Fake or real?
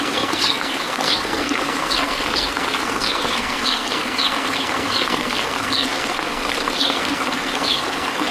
fake